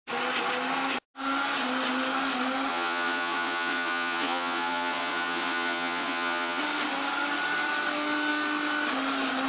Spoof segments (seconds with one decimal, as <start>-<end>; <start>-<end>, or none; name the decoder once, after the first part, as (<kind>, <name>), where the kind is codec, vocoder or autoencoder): 2.7-6.6 (vocoder, Vocos)